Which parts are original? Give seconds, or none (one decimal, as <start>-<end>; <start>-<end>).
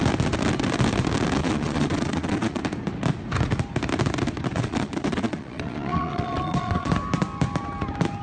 0.0-1.4; 2.6-4.5; 6.9-8.2